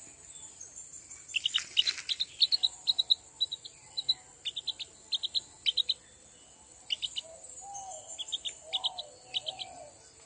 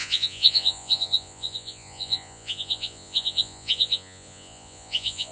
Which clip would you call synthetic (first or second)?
second